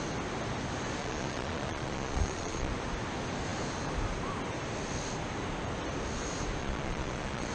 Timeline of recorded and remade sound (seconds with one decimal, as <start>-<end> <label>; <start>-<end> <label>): 0.0-1.0 recorded; 1.0-2.7 remade; 2.7-6.6 recorded; 6.6-7.5 remade